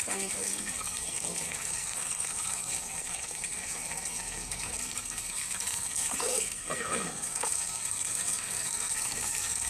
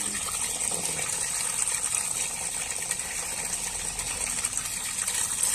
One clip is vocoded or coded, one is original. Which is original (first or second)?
second